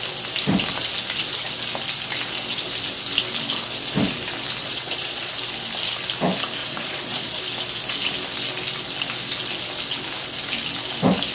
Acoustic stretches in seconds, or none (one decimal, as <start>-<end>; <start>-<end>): 0.0-4.6; 5.3-6.6; 7.4-11.3